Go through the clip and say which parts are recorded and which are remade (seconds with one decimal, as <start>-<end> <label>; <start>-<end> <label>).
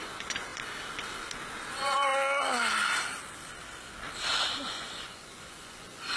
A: 0.0-0.5 remade; 0.5-1.7 recorded; 1.7-2.1 remade; 2.1-4.4 recorded; 4.4-6.2 remade